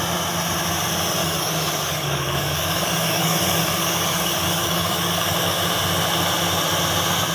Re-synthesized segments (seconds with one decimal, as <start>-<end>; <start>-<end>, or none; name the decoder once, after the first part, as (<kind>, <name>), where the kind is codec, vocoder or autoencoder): 1.2-5.6 (codec, DAC)